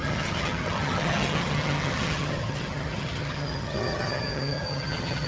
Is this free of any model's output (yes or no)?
no